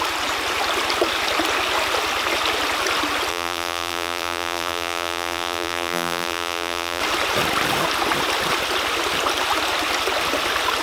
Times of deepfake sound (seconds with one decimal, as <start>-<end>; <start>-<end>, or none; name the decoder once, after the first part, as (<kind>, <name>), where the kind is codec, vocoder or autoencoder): 3.3-7.0 (vocoder, BigVGAN v2)

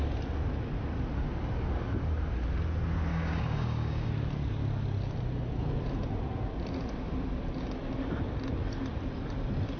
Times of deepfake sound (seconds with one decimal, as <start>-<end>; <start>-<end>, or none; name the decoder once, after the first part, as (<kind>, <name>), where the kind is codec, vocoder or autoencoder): 3.1-4.1 (codec, DAC)

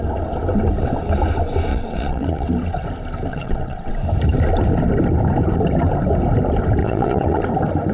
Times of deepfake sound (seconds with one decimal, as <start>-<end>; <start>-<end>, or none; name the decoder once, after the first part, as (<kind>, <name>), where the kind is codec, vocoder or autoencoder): 1.7-2.5 (vocoder, WaveNeXt); 3.3-3.9; 6.8-7.4

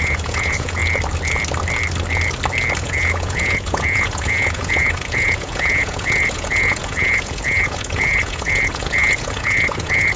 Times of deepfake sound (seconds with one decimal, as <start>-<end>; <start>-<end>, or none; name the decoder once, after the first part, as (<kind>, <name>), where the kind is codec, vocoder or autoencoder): 0.0-0.8 (vocoder, Vocos); 2.8-10.2

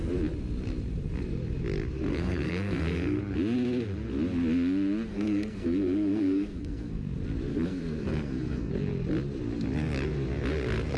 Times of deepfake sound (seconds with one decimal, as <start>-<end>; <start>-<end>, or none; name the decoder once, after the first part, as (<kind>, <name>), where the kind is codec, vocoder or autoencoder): 2.1-3.2 (codec, SNAC); 5.1-6.9; 7.5-8.7